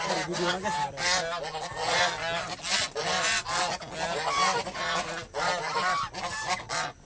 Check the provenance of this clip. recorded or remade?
recorded